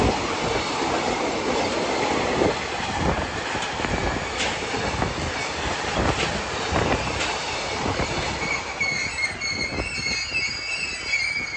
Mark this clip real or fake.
real